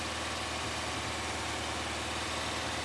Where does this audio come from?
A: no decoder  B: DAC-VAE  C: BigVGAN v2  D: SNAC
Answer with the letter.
A